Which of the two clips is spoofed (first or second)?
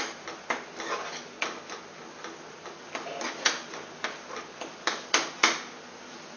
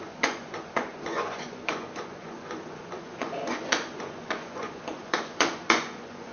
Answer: second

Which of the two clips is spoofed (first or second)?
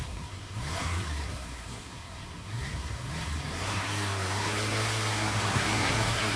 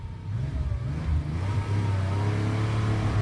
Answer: first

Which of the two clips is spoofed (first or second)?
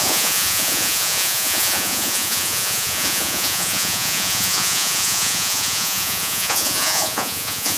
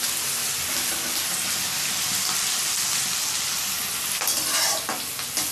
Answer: first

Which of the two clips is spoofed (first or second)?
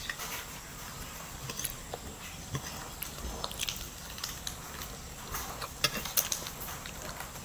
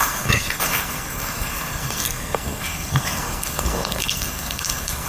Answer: second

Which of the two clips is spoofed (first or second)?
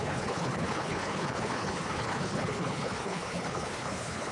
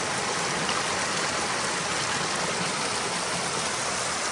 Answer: first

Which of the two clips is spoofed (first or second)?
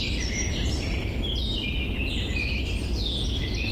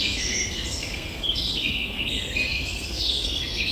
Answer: second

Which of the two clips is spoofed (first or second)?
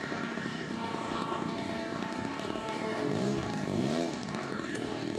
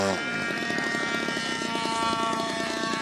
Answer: first